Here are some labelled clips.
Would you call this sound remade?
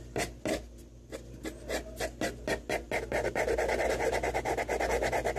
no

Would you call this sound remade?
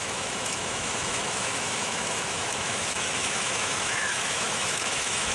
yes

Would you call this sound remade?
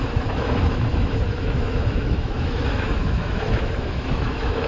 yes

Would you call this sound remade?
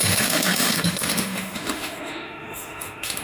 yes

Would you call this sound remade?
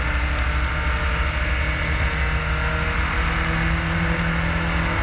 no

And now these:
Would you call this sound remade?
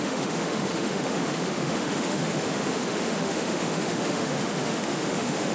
yes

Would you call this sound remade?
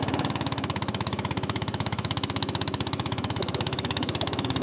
yes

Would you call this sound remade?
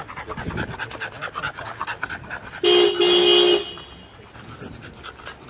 no